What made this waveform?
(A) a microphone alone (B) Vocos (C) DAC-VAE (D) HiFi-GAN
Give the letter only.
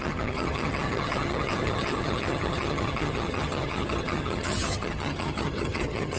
D